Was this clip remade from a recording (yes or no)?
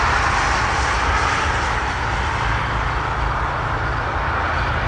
no